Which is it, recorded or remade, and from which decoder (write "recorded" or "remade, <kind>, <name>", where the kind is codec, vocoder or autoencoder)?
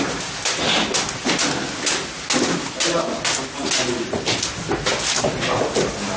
recorded